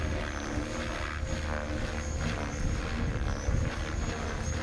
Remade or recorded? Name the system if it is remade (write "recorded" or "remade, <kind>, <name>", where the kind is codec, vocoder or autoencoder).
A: recorded